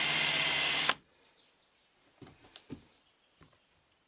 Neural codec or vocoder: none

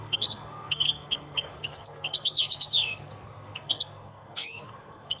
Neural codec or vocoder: codec, SNAC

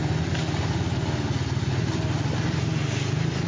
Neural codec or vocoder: none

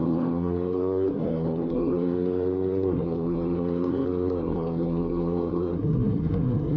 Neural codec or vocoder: codec, SNAC